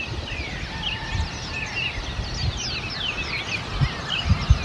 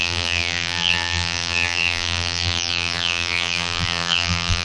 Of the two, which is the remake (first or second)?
second